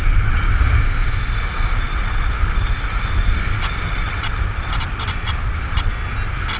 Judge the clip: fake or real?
real